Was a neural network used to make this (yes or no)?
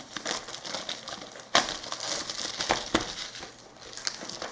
no